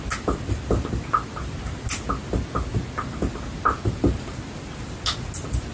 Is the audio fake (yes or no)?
no